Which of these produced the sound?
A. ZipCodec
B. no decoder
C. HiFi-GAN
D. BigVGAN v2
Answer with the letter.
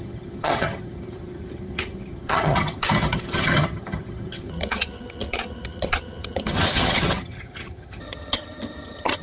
C